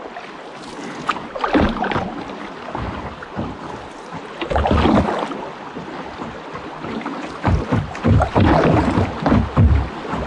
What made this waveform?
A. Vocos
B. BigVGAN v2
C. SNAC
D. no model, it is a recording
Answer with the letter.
D